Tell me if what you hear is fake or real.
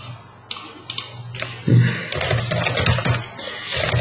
real